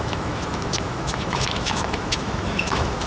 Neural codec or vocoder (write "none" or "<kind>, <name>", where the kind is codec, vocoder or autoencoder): autoencoder, DAC-VAE